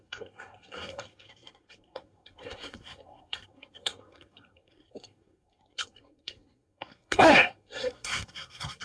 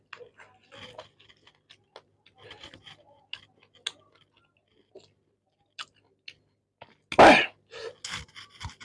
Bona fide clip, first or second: second